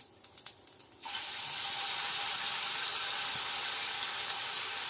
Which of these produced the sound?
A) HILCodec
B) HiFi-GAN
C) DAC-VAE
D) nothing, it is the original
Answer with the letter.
D